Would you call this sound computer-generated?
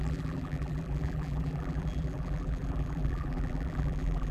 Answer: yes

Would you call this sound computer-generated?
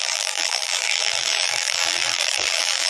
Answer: yes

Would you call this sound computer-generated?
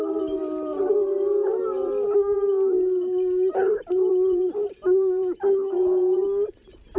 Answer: yes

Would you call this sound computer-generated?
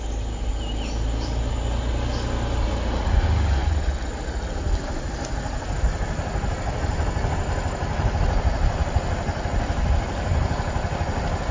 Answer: no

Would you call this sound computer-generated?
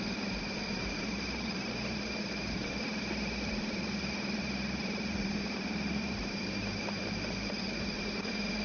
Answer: yes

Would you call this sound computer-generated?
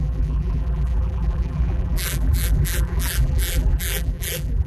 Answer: yes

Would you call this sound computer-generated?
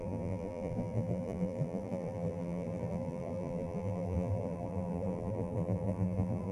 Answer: yes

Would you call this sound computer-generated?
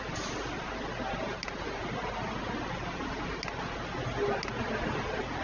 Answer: no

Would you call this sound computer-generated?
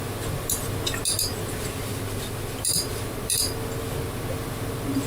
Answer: no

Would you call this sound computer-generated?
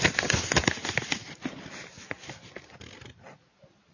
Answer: no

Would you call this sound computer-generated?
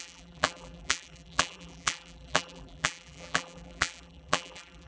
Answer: yes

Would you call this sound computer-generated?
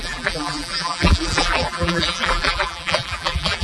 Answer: yes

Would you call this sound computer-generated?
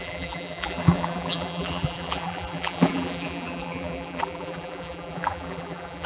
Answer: yes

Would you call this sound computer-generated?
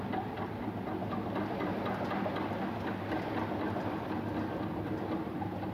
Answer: no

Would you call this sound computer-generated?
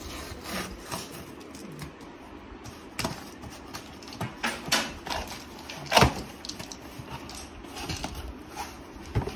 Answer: no